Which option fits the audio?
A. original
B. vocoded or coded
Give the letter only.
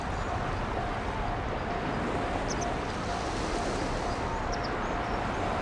A